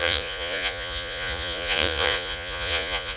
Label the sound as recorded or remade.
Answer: remade